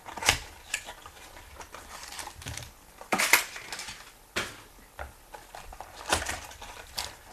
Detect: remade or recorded recorded